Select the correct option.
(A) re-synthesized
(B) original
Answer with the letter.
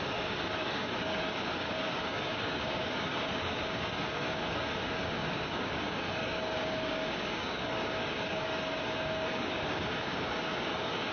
A